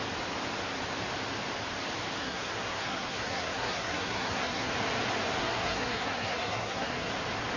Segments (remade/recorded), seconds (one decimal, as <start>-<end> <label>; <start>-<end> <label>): 0.0-2.2 recorded; 2.2-4.7 remade; 4.7-5.4 recorded; 5.4-7.1 remade; 7.1-7.6 recorded